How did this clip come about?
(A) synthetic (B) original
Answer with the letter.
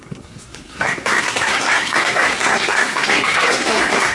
A